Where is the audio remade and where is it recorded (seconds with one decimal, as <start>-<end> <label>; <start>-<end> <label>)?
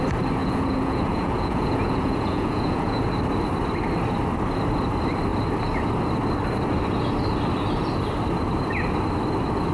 0.0-0.4 recorded; 0.4-3.1 remade; 3.1-9.7 recorded